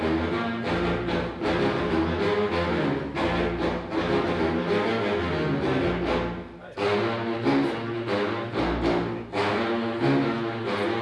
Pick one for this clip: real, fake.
real